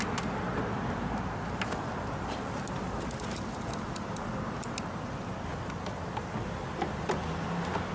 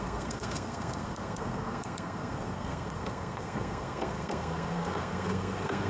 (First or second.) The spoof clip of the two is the second